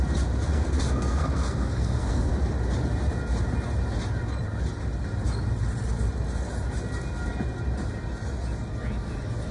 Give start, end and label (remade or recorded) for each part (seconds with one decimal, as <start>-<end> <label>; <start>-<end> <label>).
0.0-0.5 recorded; 0.5-2.3 remade; 2.3-9.5 recorded